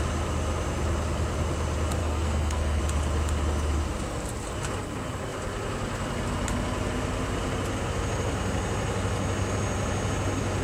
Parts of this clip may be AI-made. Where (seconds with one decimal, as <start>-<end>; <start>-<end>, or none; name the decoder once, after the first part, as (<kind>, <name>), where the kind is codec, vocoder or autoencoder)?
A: 2.0-2.8 (codec, SNAC)